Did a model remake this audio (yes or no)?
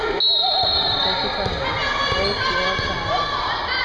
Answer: no